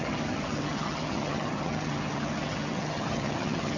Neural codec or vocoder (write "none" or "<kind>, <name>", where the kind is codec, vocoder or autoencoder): vocoder, HiFi-GAN